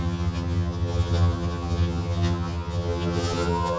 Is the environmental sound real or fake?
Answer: fake